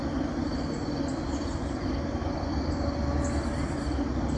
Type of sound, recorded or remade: recorded